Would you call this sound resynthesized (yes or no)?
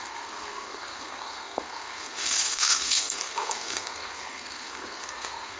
yes